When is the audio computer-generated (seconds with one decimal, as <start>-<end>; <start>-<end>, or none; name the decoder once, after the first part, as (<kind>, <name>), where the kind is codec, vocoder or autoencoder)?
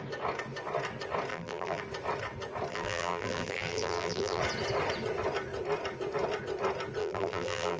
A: 1.3-1.8 (vocoder, BigVGAN v2); 2.7-4.4; 7.0-7.8